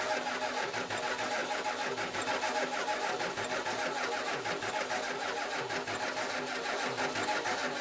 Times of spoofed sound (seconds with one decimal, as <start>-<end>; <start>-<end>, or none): none